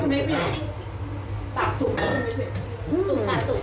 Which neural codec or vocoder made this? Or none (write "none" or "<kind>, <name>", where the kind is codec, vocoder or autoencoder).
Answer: none